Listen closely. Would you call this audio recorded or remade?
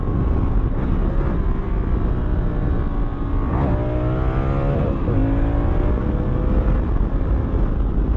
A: recorded